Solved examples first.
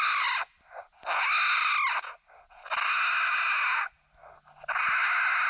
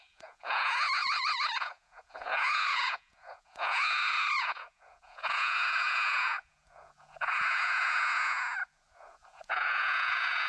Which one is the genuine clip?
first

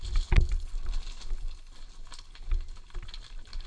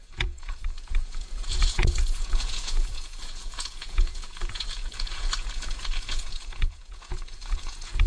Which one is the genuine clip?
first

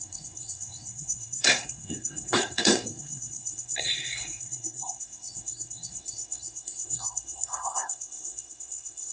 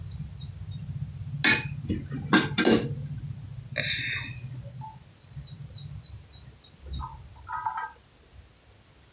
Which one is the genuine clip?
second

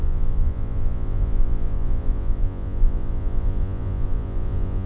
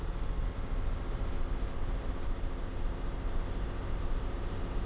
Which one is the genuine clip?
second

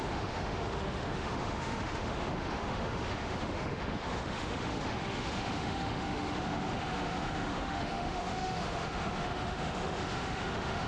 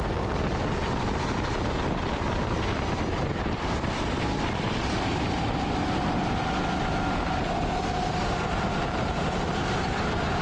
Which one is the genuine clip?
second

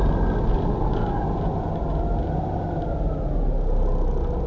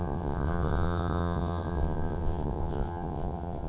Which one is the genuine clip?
first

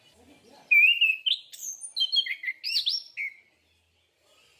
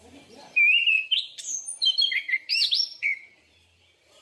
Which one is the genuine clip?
first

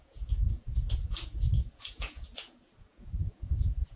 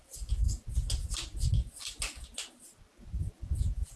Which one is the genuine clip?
second